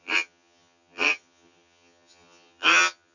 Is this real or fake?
fake